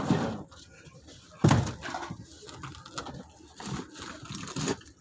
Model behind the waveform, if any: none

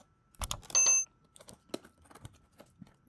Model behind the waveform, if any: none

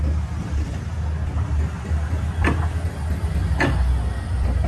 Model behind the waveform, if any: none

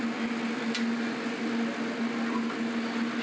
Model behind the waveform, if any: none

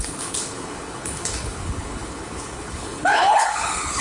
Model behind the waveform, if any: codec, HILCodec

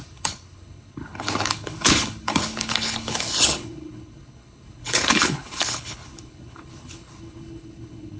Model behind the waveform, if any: codec, HILCodec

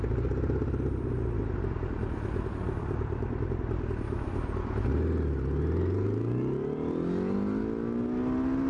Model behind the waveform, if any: none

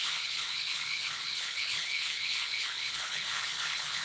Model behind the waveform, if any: codec, HILCodec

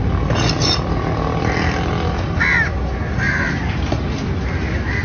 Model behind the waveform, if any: none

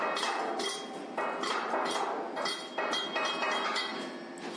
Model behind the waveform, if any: none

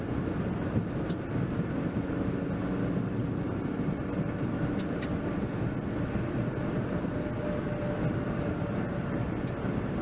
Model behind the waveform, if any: none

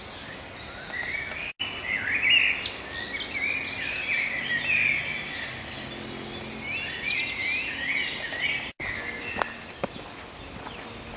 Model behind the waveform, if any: none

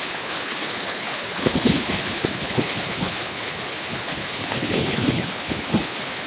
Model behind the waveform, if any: codec, HILCodec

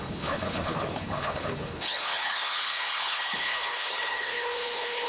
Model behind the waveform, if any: codec, HILCodec